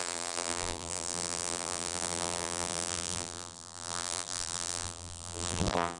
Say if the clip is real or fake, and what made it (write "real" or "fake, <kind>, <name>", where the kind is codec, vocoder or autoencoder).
fake, vocoder, BigVGAN v2